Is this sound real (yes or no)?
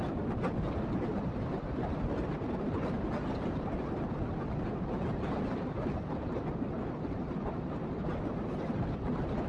yes